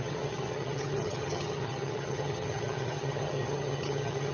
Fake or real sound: fake